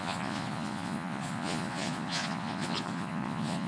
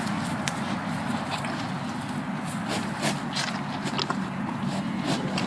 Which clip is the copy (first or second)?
first